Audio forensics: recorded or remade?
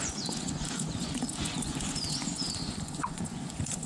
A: remade